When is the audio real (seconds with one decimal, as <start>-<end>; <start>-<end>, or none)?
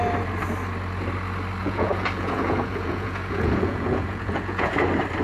0.0-1.6; 4.7-5.2